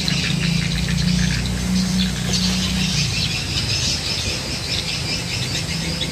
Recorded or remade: recorded